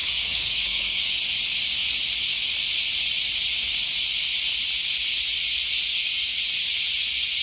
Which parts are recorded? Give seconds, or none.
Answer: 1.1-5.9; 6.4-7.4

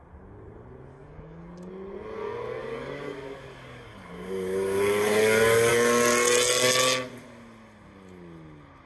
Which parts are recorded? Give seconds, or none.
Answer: 0.0-0.9; 1.7-2.6; 5.7-8.9

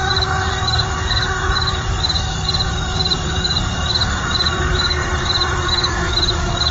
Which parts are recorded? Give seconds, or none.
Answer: 5.0-5.6

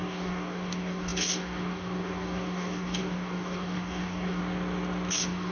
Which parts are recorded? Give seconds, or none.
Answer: 4.4-5.1

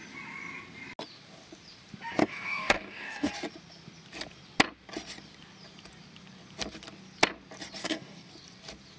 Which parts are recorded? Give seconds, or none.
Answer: 0.0-2.2; 3.3-7.8; 8.3-9.0

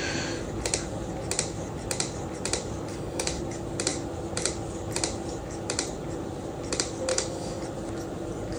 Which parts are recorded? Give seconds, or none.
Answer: 0.0-2.9; 3.4-7.1; 7.6-8.6